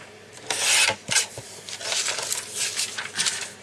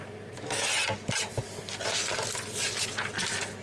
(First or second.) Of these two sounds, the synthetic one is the first